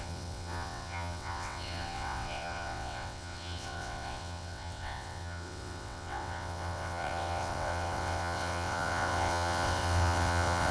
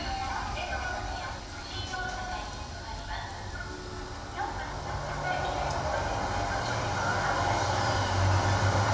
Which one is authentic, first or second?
second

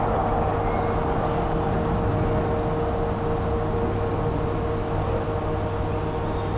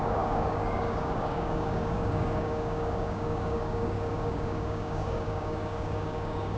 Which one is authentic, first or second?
first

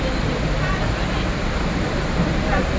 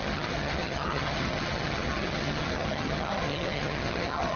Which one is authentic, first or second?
first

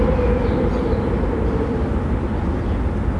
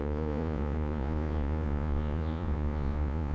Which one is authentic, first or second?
first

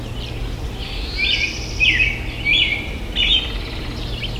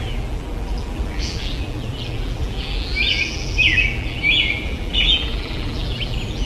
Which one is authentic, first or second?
first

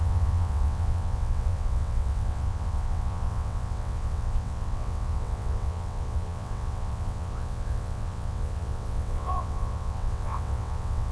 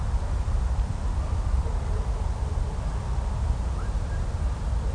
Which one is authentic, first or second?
second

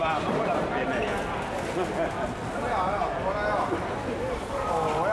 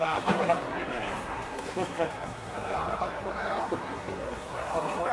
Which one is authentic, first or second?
first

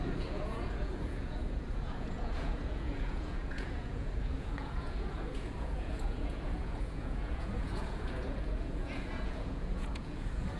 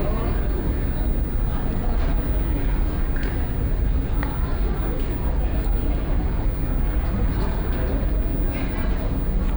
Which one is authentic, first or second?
second